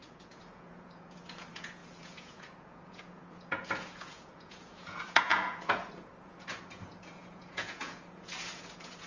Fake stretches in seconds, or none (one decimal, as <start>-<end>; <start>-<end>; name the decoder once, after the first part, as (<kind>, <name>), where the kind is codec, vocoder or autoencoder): 0.0-9.1 (vocoder, Vocos)